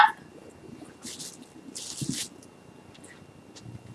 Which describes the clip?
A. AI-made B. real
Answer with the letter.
B